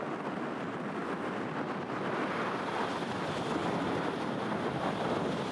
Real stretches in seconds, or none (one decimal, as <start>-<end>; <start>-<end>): 0.0-5.5